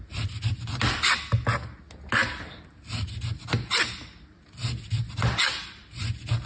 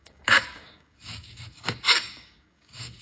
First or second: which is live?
first